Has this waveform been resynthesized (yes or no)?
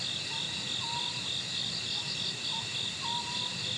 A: no